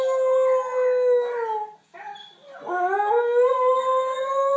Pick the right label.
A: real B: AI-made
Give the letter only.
A